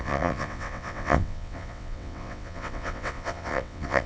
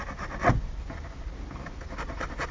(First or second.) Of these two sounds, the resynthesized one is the first